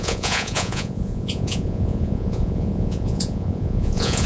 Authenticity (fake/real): fake